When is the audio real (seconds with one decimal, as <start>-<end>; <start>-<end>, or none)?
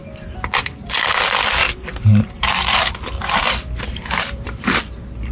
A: 0.0-1.6; 4.8-5.3